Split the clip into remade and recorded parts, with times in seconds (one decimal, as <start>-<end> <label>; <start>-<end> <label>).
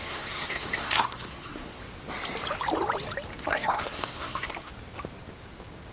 0.0-1.8 remade; 1.8-3.3 recorded; 3.3-4.7 remade; 4.7-5.9 recorded